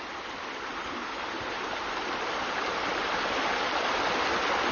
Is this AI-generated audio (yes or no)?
no